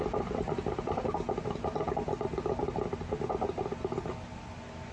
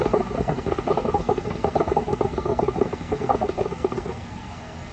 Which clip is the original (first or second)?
first